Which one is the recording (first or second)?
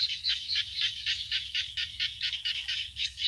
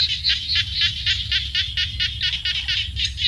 second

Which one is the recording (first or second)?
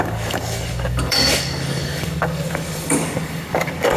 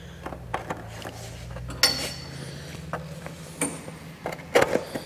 second